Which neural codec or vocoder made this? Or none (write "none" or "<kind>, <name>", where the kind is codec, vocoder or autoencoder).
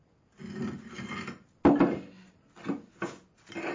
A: none